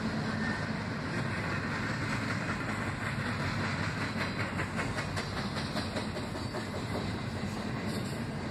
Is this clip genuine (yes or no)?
yes